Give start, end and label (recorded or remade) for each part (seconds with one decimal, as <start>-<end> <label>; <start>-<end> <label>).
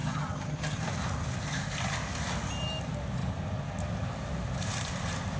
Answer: 0.0-0.8 remade; 0.8-5.4 recorded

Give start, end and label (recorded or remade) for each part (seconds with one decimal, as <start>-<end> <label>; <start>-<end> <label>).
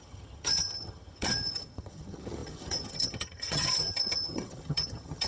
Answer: 0.0-5.3 remade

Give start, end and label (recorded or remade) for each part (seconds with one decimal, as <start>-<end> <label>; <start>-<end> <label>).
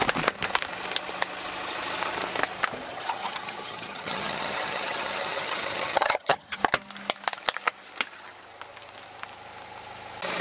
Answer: 0.0-2.9 recorded; 2.9-6.6 remade; 6.6-10.4 recorded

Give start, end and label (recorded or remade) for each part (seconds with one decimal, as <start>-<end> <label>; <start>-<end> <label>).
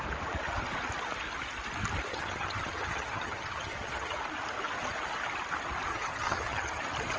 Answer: 0.0-2.1 recorded; 2.1-4.2 remade; 4.2-5.9 recorded; 5.9-6.8 remade; 6.8-7.2 recorded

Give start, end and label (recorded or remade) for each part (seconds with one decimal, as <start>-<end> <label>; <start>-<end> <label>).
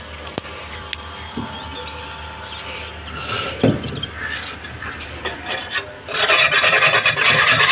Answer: 0.0-7.7 recorded